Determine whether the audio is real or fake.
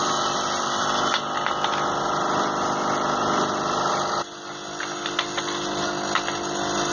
real